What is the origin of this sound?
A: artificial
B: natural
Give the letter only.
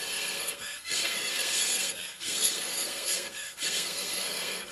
A